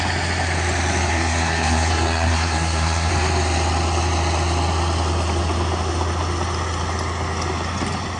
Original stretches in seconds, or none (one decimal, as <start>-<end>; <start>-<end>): 0.0-1.1; 3.1-8.2